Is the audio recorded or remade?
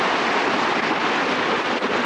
recorded